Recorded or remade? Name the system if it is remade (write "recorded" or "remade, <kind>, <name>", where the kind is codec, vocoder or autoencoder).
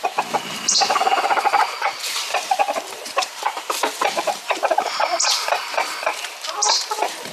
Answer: remade, vocoder, BigVGAN v2